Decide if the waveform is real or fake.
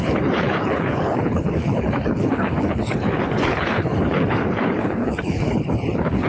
fake